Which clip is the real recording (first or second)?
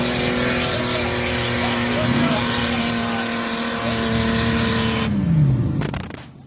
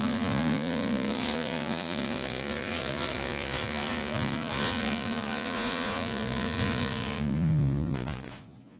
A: first